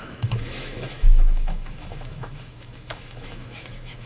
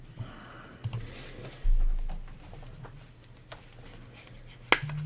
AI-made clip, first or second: first